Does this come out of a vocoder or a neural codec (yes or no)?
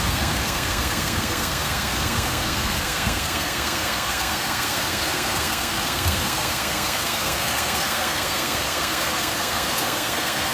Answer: yes